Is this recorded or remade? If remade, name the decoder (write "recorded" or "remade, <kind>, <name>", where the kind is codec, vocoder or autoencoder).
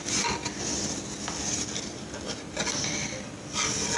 recorded